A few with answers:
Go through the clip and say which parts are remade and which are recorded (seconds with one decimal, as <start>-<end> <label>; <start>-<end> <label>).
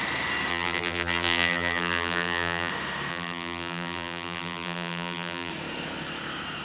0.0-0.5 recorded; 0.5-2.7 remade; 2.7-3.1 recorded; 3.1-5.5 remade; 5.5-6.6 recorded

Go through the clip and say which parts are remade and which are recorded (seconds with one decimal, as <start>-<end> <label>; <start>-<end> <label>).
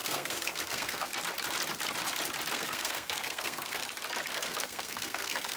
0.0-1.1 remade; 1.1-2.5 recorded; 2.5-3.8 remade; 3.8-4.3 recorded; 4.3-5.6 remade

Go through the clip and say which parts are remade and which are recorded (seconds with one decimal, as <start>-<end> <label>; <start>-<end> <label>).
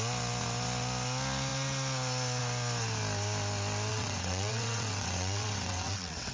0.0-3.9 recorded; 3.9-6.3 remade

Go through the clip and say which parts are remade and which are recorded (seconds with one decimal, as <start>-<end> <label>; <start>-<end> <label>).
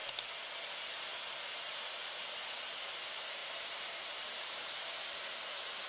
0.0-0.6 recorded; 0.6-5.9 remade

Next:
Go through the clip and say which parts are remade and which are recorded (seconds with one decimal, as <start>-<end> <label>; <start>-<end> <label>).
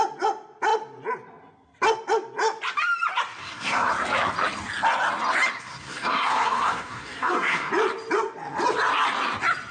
0.0-3.4 recorded; 3.4-3.9 remade; 3.9-5.5 recorded; 5.5-7.7 remade; 7.7-9.7 recorded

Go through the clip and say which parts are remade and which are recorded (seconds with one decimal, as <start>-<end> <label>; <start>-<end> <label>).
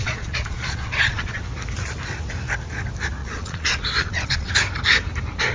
0.0-1.4 remade; 1.4-3.2 recorded; 3.2-4.5 remade; 4.5-5.5 recorded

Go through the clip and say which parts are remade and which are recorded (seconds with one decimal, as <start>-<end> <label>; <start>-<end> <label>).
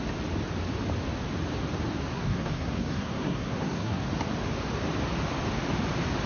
0.0-2.1 recorded; 2.1-4.0 remade; 4.0-6.3 recorded